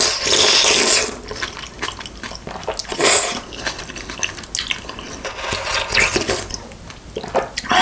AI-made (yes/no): no